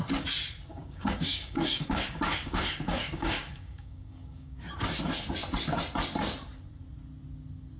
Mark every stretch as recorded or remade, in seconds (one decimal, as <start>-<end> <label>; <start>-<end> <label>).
0.0-0.7 recorded; 0.7-5.0 remade; 5.0-7.8 recorded